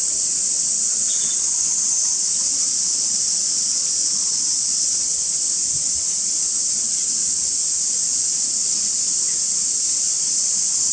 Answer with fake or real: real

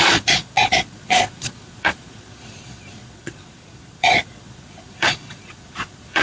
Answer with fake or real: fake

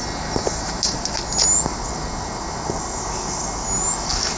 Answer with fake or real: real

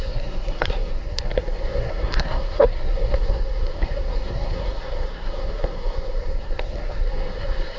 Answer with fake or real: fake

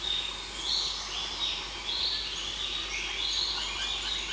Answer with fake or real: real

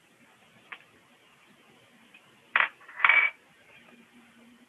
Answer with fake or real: fake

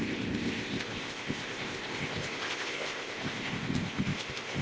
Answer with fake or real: fake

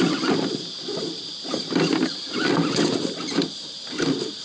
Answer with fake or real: real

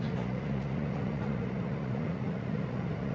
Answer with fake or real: fake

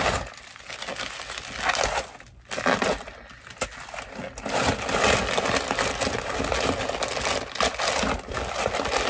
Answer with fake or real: real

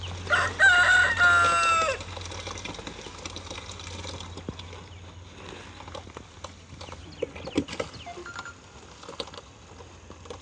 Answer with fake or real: real